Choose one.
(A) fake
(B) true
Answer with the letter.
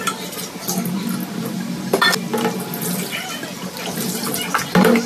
B